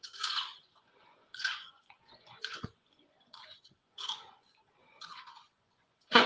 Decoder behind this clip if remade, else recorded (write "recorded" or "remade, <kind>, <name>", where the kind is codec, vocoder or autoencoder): remade, vocoder, Vocos